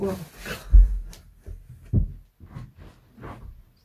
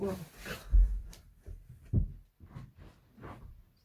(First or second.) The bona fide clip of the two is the first